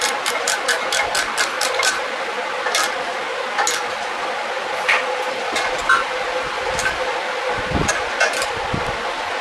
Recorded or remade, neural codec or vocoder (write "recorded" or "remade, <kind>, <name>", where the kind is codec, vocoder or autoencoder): recorded